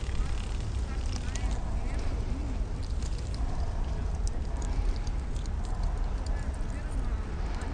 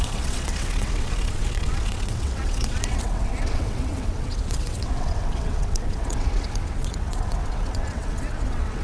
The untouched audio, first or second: first